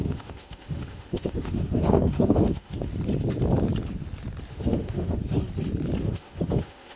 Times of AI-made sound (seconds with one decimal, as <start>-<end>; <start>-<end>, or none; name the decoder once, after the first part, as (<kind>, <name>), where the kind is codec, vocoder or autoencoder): 0.0-2.9 (autoencoder, DAC-VAE); 4.5-5.4; 6.0-7.0